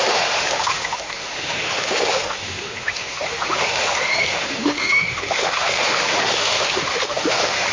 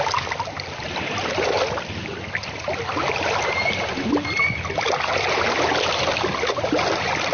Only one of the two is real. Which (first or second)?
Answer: second